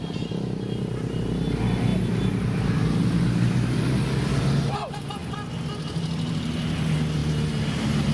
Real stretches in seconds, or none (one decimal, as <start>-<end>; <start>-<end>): 0.0-8.1